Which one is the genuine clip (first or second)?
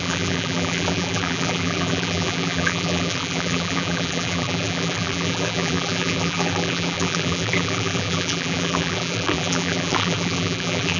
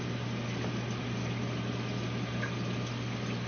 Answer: second